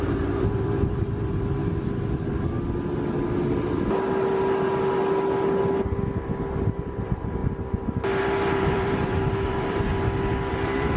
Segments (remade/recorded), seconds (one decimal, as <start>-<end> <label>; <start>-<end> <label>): 0.0-1.6 remade; 1.6-6.8 recorded; 6.8-7.4 remade; 7.4-8.2 recorded; 8.2-9.9 remade; 9.9-10.5 recorded; 10.5-11.0 remade